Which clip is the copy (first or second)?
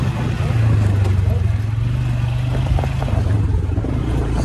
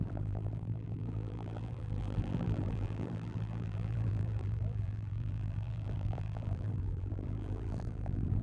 second